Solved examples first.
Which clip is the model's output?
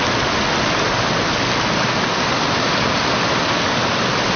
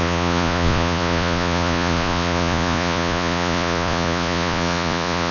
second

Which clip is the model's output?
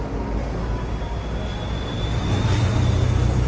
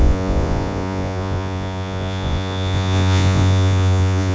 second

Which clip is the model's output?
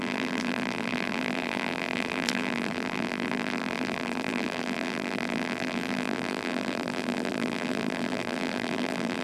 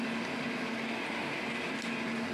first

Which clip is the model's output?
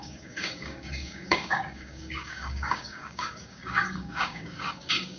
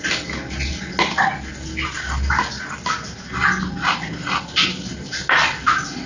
first